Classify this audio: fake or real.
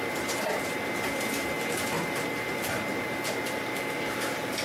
fake